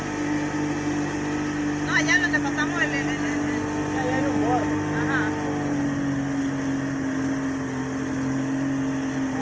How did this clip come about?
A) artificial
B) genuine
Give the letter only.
B